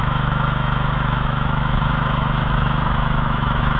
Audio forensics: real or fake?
fake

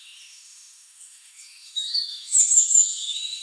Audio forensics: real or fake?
fake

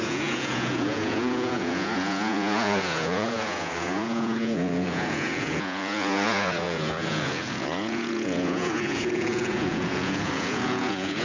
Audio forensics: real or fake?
fake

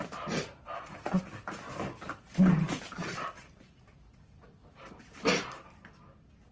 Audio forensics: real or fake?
real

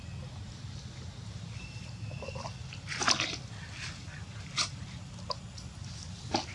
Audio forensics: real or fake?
real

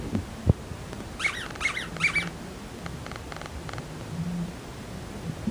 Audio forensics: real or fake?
real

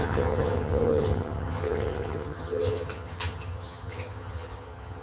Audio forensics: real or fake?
fake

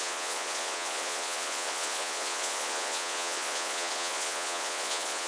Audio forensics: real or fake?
fake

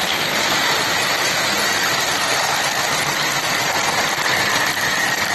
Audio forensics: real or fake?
real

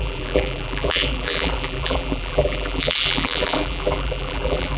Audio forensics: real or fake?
fake